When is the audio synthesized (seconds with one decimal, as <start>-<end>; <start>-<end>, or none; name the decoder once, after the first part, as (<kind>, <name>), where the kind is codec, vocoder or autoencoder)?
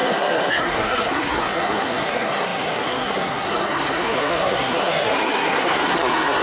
0.0-6.4 (codec, SNAC)